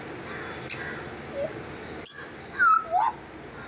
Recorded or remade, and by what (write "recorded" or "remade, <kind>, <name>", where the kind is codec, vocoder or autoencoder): recorded